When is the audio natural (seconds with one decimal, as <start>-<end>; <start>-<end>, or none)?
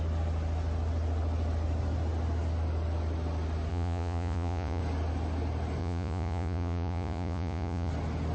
0.0-3.7; 4.8-5.8; 7.9-8.3